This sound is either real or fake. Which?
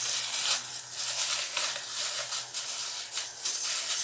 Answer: real